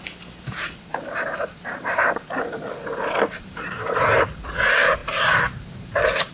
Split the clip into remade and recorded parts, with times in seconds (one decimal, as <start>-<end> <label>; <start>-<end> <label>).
0.0-0.9 recorded; 0.9-3.9 remade; 3.9-5.0 recorded; 5.0-6.3 remade